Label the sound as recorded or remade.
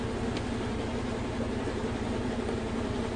recorded